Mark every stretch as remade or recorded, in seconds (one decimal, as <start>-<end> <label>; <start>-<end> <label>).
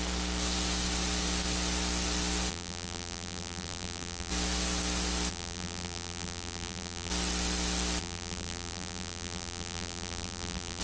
0.0-2.5 recorded; 2.5-4.3 remade; 4.3-5.3 recorded; 5.3-7.1 remade; 7.1-8.0 recorded; 8.0-10.8 remade